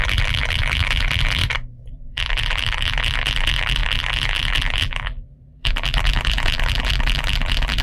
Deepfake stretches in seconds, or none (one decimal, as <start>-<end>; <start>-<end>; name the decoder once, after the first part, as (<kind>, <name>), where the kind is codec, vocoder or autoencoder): 0.0-1.4 (vocoder, BigVGAN v2); 1.9-7.8